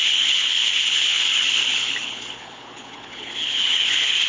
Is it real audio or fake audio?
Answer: fake